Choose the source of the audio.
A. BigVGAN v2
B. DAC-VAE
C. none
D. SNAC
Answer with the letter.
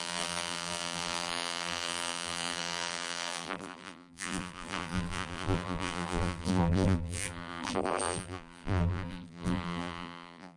A